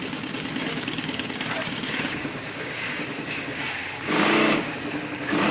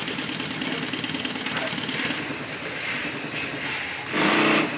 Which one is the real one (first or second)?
second